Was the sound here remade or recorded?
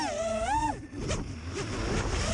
recorded